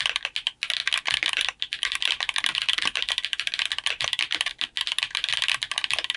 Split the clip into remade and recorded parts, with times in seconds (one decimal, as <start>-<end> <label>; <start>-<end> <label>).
0.0-0.8 recorded; 0.8-4.5 remade; 4.5-6.2 recorded